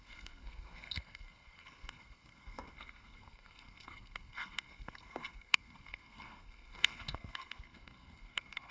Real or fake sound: fake